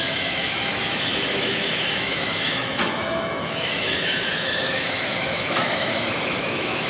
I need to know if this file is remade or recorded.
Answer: remade